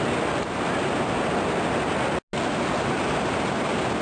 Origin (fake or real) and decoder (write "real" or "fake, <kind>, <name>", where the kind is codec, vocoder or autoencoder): real